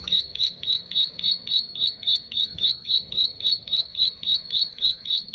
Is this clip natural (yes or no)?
no